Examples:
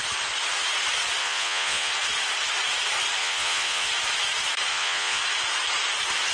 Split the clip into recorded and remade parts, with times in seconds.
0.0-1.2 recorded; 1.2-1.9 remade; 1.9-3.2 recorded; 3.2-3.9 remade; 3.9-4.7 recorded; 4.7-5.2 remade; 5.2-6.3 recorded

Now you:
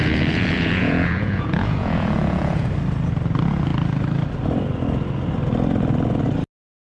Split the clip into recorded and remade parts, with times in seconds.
0.0-2.7 remade; 2.7-6.9 recorded

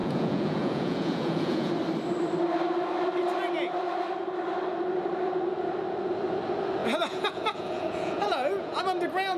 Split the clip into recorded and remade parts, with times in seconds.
0.0-1.7 remade; 1.7-6.8 recorded; 6.8-8.8 remade; 8.8-9.4 recorded